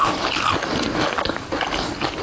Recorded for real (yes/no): yes